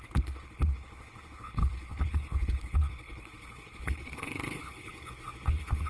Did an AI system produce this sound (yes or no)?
yes